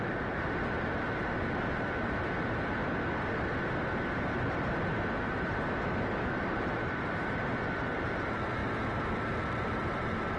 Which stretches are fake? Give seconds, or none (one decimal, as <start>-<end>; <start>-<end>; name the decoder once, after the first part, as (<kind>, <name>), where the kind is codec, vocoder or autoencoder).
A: 0.0-2.8 (vocoder, BigVGAN v2); 5.2-8.6; 9.6-10.4